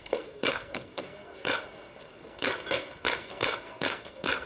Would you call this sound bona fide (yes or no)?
no